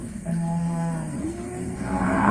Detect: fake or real fake